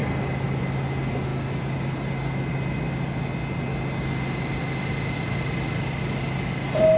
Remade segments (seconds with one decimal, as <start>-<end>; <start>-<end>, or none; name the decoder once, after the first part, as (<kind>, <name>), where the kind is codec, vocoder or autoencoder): none